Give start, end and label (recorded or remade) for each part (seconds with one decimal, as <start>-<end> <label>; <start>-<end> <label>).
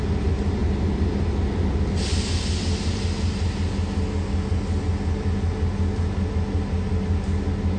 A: 0.0-7.8 recorded